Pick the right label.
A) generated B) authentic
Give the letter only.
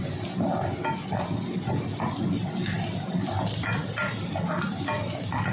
B